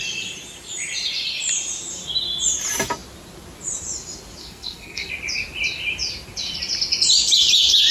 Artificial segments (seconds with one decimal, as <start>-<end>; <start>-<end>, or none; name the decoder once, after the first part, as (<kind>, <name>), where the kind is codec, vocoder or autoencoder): 4.4-5.1 (codec, SNAC)